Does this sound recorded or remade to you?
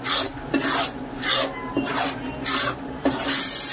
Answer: recorded